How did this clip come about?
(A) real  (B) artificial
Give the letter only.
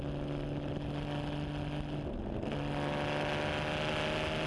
A